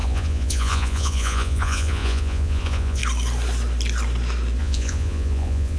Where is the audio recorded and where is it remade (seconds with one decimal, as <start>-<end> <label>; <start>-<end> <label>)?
0.0-3.0 remade; 3.0-4.6 recorded; 4.6-5.8 remade